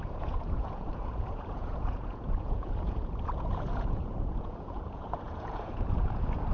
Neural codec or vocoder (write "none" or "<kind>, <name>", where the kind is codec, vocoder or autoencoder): vocoder, Vocos